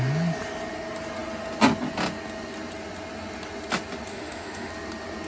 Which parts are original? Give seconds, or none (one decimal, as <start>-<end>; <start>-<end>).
0.0-4.1; 4.7-5.3